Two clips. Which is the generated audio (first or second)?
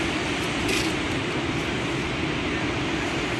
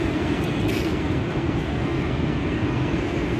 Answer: second